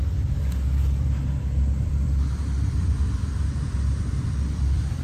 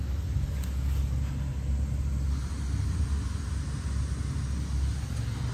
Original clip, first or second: second